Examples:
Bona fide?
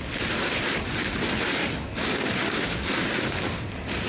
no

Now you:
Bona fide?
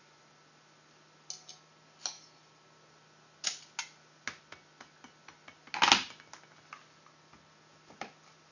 yes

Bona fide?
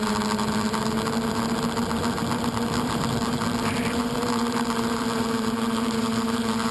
no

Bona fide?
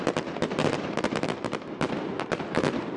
no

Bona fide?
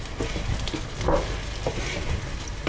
yes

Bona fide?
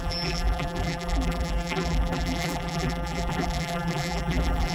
no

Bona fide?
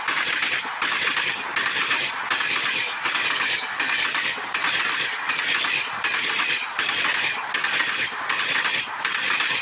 yes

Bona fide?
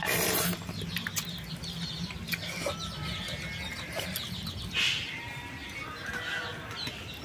yes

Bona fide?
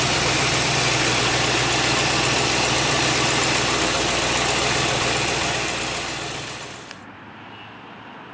yes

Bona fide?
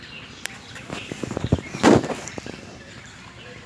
no